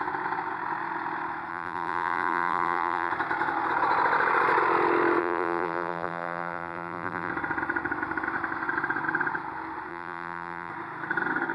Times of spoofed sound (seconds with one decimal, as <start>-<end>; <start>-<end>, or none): 1.5-3.1; 5.2-7.3; 9.9-10.7